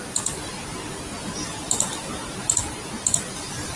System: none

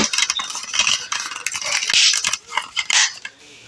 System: none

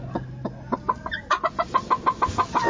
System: none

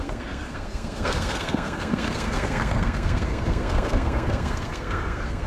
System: codec, SNAC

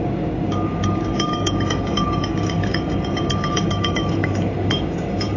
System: codec, DAC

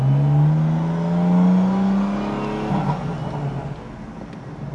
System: none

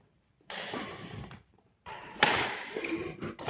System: vocoder, BigVGAN v2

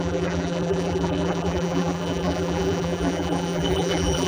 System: vocoder, BigVGAN v2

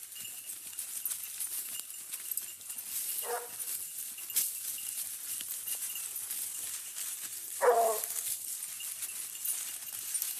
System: none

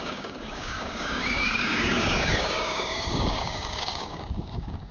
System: codec, DAC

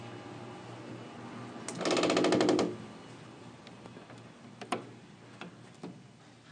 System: none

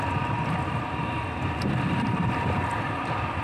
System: none